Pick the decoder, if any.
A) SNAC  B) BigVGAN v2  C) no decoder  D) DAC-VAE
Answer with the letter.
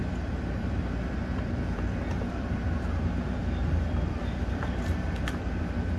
B